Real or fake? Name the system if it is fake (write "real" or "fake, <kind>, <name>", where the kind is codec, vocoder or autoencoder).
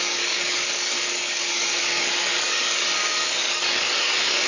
fake, codec, DAC